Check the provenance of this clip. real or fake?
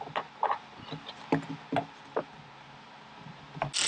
real